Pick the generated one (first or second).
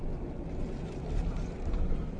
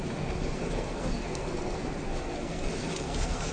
second